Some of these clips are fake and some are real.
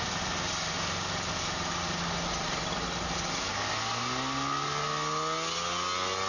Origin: real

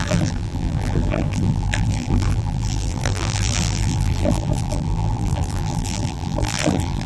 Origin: fake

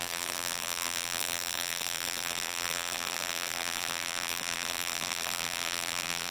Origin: fake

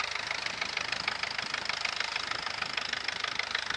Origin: fake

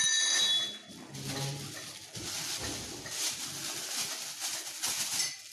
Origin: real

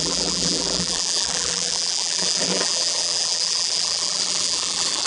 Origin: fake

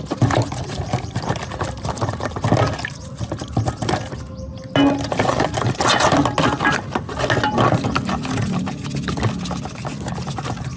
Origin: real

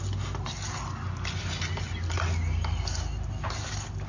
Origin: real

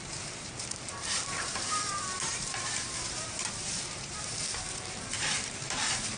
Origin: fake